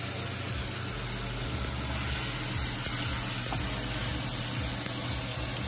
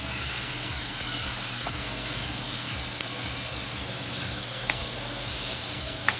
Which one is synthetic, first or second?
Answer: second